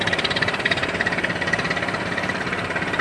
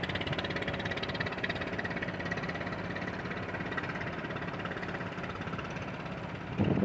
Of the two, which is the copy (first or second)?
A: first